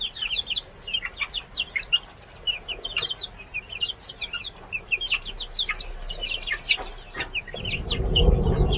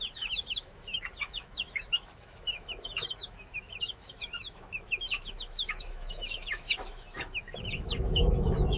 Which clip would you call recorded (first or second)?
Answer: first